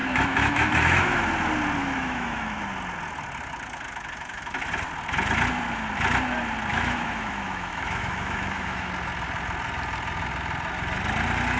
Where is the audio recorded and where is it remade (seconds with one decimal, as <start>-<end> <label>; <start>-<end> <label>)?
0.0-1.2 remade; 1.2-1.8 recorded; 1.8-2.6 remade; 2.6-6.7 recorded; 6.7-8.9 remade; 8.9-11.6 recorded

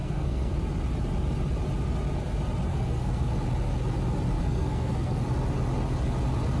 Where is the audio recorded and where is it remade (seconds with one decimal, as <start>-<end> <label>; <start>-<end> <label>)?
0.0-0.5 remade; 0.5-2.7 recorded; 2.7-3.3 remade; 3.3-4.4 recorded; 4.4-5.2 remade; 5.2-6.6 recorded

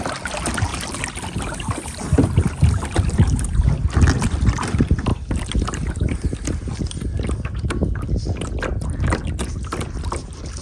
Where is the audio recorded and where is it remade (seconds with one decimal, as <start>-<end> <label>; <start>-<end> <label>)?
0.0-10.6 recorded

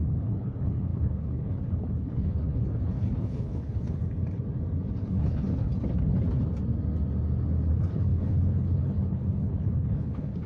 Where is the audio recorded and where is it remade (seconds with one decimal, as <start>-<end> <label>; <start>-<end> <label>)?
0.0-4.0 remade; 4.0-5.0 recorded; 5.0-5.7 remade; 5.7-7.7 recorded; 7.7-10.5 remade

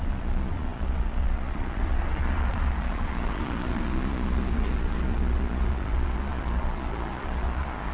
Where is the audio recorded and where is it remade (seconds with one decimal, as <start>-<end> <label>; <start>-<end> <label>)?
0.0-7.9 remade

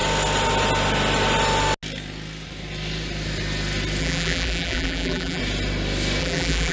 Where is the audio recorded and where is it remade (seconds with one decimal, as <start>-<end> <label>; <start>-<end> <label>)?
0.0-4.0 recorded; 4.0-5.4 remade; 5.4-6.2 recorded; 6.2-6.7 remade

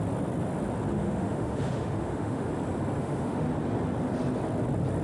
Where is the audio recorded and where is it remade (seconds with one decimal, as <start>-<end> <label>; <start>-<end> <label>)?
0.0-0.9 recorded; 0.9-2.5 remade; 2.5-3.0 recorded; 3.0-3.5 remade; 3.5-5.0 recorded

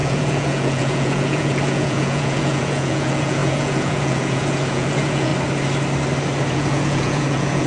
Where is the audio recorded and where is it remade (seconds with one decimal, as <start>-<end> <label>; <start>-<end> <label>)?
0.0-5.3 remade; 5.3-6.5 recorded; 6.5-7.7 remade